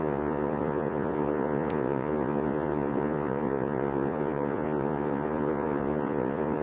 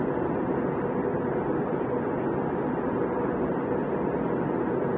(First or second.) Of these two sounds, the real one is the second